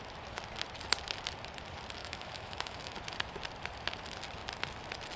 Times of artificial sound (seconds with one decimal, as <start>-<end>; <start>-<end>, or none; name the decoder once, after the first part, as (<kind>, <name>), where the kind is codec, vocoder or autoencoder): 2.0-2.9 (autoencoder, DAC-VAE)